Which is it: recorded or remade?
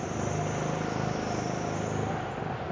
recorded